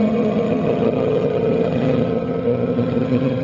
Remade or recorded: remade